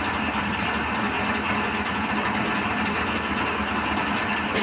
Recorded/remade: recorded